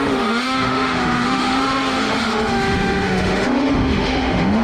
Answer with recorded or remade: remade